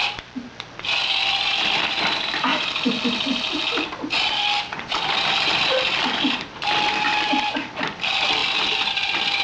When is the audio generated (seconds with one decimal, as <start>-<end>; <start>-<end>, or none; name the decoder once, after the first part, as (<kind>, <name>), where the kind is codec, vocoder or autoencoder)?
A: none